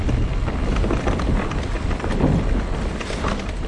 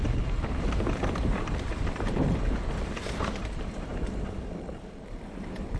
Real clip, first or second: first